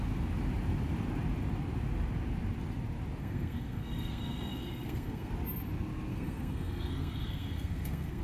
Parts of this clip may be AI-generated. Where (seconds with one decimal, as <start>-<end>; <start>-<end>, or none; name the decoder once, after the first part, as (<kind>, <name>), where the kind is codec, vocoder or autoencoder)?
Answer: 3.2-5.3 (codec, SNAC); 6.1-8.2